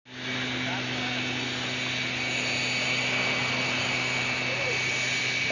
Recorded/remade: recorded